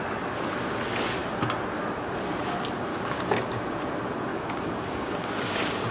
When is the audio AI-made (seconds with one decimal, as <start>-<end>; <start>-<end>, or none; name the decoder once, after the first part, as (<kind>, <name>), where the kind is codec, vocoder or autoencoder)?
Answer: 2.9-3.5 (codec, DAC); 4.3-5.9